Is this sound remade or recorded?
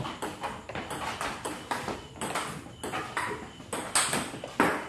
recorded